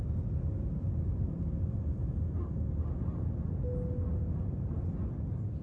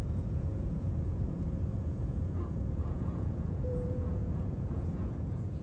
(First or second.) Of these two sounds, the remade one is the second